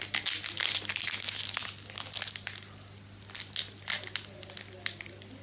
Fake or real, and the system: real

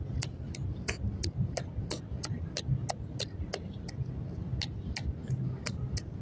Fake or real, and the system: real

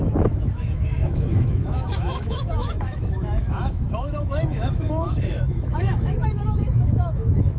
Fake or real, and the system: fake, autoencoder, DAC-VAE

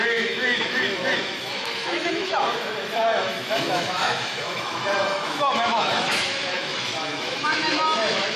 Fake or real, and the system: fake, autoencoder, DAC-VAE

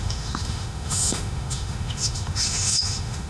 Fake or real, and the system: fake, autoencoder, DAC-VAE